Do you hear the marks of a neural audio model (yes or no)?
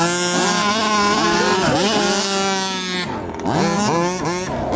no